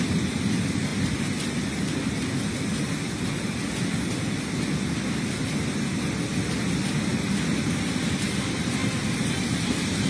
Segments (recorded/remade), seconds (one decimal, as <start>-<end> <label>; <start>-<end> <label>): 0.0-10.1 recorded